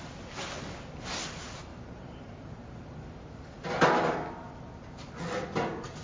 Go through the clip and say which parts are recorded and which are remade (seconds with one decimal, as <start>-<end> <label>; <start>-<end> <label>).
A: 0.0-1.7 recorded; 1.7-3.4 remade; 3.4-6.0 recorded